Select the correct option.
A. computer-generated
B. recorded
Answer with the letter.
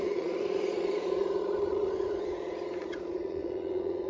A